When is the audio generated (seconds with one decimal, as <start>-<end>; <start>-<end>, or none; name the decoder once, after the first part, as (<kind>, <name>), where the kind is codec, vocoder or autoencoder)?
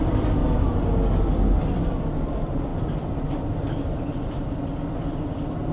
none